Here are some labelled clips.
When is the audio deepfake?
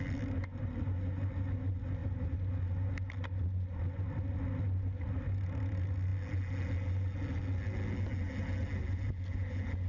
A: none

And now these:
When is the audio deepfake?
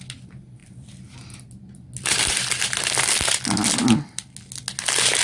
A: none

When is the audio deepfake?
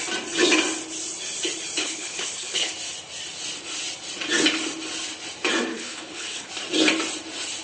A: 1.8-2.7 (codec, HILCodec); 5.7-6.5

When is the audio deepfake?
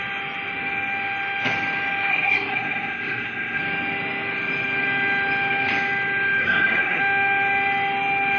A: 2.1-3.6 (codec, SNAC); 6.4-7.0